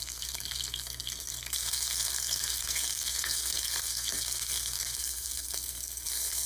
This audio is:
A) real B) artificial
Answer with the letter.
B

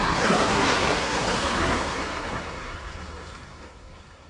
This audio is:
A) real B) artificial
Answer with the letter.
B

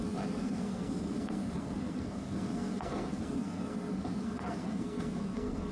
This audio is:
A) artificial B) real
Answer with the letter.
A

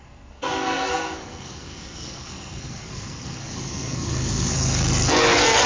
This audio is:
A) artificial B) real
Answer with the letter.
A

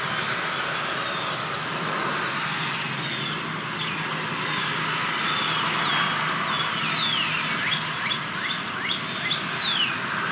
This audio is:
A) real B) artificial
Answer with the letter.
A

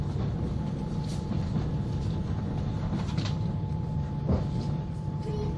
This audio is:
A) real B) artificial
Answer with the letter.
A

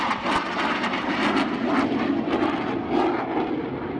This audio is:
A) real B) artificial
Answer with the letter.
A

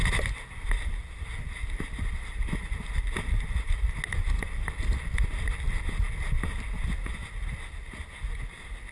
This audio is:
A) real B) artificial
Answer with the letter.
A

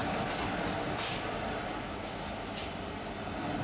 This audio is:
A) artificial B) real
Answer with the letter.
B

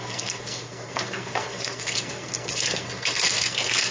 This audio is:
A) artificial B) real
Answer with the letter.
A